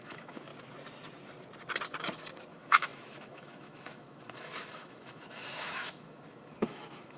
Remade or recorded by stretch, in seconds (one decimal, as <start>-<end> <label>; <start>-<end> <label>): 0.0-0.5 remade; 0.5-2.5 recorded; 2.5-7.2 remade